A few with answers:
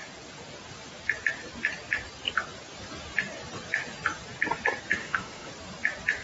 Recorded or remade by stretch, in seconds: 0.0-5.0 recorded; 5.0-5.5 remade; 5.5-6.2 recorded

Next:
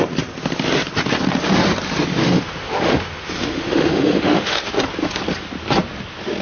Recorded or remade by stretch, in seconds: 0.0-2.2 recorded; 2.2-4.7 remade; 4.7-6.4 recorded